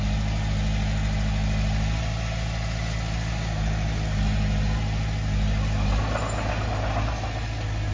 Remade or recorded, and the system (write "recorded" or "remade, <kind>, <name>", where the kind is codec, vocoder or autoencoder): recorded